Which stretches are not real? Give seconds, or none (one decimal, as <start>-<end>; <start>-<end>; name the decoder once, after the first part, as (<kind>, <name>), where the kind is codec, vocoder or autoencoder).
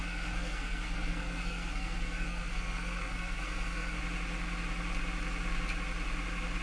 0.0-4.0 (codec, SNAC)